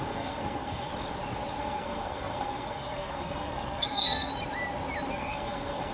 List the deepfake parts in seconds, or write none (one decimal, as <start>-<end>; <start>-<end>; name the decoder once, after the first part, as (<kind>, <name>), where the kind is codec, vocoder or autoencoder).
0.0-0.9 (codec, SNAC); 1.6-4.3; 5.1-5.9